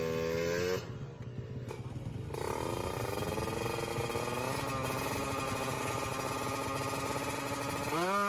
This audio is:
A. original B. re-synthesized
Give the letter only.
A